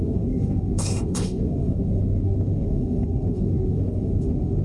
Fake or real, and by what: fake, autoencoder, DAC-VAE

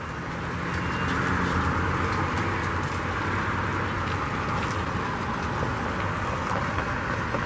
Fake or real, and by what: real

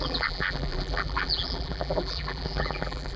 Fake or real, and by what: fake, vocoder, BigVGAN v2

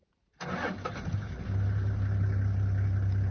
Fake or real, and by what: real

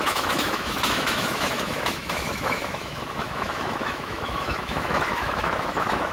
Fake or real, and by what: fake, autoencoder, DAC-VAE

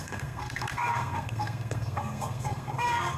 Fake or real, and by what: fake, codec, SNAC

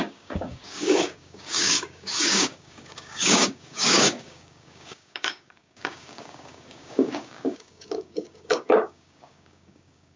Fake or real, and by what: fake, codec, DAC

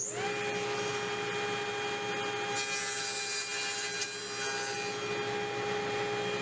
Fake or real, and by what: real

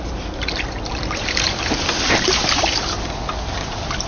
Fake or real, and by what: real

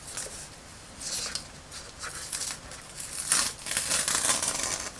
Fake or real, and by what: real